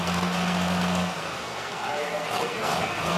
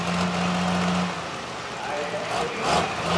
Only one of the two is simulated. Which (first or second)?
first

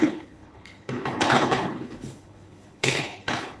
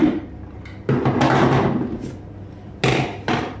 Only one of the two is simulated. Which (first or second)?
first